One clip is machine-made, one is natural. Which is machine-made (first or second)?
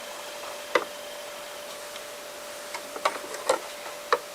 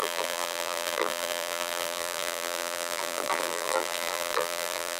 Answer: second